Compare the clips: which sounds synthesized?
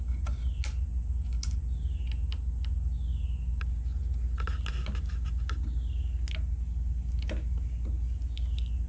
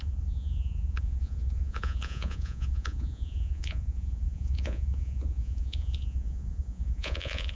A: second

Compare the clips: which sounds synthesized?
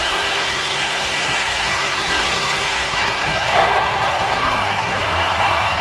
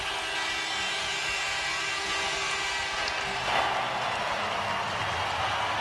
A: first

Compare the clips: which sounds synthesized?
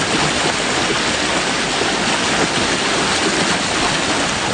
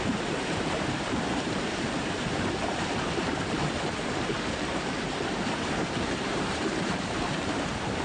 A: second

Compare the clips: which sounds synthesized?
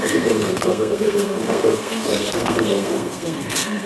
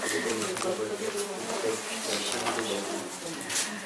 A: first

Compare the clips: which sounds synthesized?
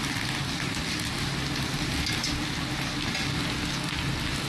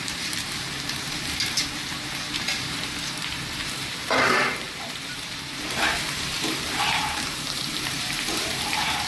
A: second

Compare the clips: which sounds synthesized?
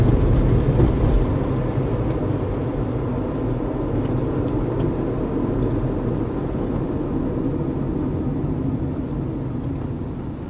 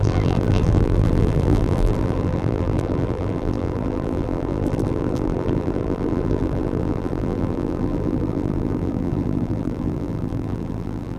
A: second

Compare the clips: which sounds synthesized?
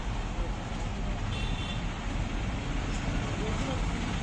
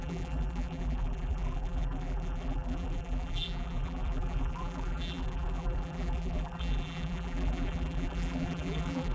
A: second